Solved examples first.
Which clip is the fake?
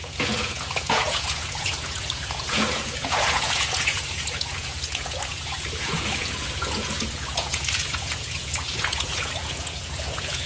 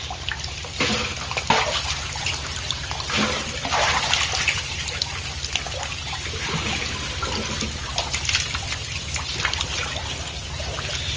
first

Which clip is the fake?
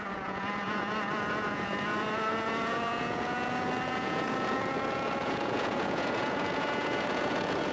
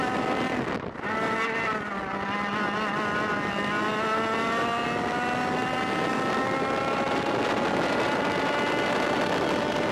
first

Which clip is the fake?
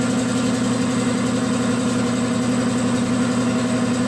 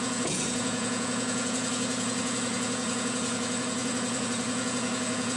second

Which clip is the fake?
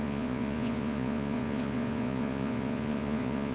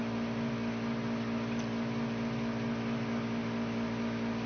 first